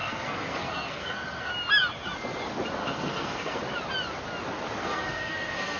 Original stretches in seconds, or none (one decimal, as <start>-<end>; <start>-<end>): 1.5-2.8; 3.6-4.8